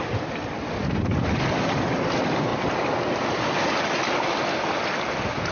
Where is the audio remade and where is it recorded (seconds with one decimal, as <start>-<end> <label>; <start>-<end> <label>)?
0.0-5.5 recorded